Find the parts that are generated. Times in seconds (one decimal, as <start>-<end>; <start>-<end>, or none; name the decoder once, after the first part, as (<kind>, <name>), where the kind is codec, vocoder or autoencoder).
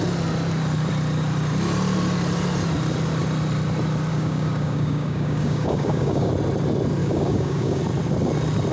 4.1-6.3 (codec, DAC); 7.0-7.8